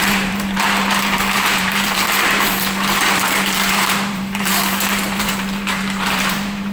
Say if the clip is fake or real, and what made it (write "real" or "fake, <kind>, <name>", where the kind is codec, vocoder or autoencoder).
fake, vocoder, BigVGAN v2